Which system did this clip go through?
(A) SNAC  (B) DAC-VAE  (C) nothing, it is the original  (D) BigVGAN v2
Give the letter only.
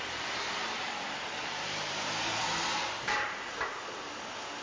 D